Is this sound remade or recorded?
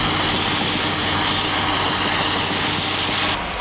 recorded